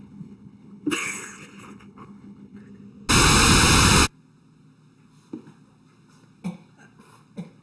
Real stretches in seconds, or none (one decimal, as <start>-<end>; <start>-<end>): 2.6-7.6